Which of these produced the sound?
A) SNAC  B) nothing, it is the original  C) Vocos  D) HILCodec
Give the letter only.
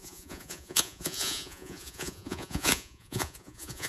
C